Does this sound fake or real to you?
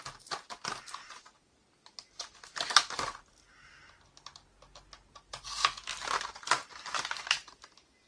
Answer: real